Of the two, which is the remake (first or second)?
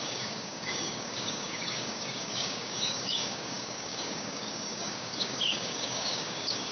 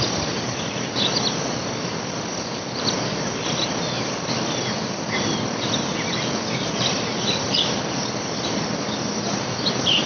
first